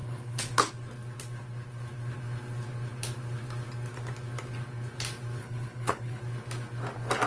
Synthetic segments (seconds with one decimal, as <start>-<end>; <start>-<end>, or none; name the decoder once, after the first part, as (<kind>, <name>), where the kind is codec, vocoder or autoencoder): 0.0-0.7 (codec, HILCodec); 5.4-6.2